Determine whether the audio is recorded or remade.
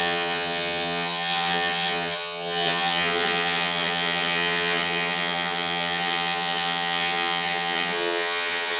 remade